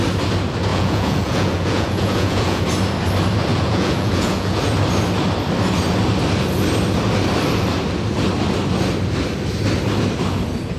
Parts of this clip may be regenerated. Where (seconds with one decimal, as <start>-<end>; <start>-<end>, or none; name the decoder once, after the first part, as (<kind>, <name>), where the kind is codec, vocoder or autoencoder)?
0.7-2.6 (vocoder, Vocos); 3.5-4.7